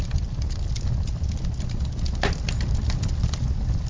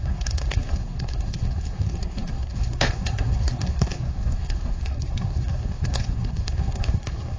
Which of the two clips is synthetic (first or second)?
second